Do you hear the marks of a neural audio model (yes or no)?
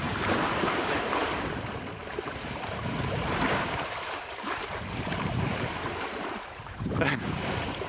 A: yes